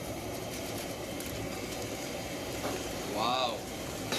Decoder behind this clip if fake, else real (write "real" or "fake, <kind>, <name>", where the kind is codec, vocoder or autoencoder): fake, vocoder, BigVGAN v2